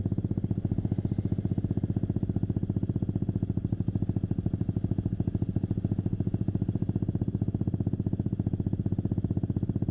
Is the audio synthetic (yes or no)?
no